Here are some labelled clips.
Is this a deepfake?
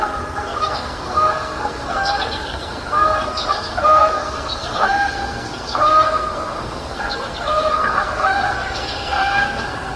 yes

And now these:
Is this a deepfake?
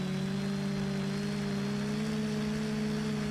no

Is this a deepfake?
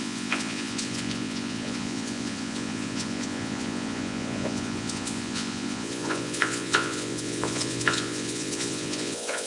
yes